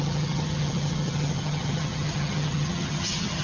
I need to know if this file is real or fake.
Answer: fake